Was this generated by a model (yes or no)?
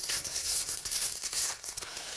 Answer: yes